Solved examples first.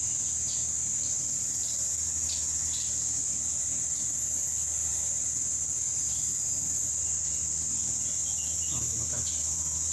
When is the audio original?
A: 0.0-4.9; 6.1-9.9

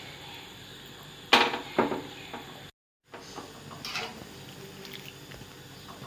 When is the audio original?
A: 0.0-6.1

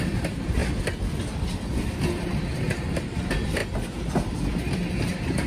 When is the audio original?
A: 0.6-2.2; 3.6-4.9